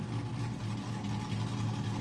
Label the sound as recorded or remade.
recorded